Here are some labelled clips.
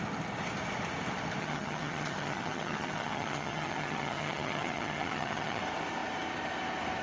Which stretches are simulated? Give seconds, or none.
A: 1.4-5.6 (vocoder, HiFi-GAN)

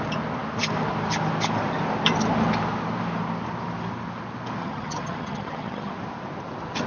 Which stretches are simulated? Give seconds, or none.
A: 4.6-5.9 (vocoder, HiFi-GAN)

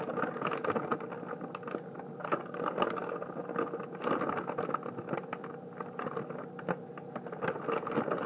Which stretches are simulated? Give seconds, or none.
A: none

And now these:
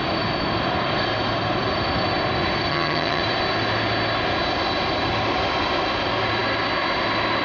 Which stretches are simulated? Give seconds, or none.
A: 2.7-3.2 (vocoder, HiFi-GAN)